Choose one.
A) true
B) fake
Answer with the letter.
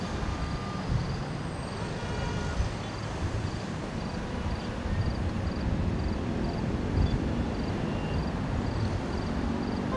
A